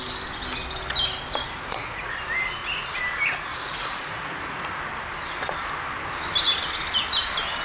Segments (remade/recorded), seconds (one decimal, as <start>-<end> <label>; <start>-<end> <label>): 0.0-1.4 recorded; 1.4-2.1 remade; 2.1-3.5 recorded; 3.5-4.6 remade; 4.6-7.6 recorded